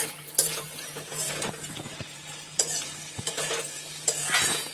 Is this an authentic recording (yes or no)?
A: no